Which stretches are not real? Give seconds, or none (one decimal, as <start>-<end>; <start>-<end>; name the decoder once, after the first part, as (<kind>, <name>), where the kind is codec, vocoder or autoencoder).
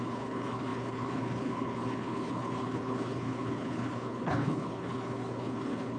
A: 0.0-6.0 (codec, HILCodec)